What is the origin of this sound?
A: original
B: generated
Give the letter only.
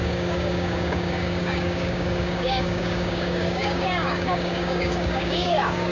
B